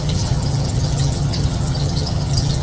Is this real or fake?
fake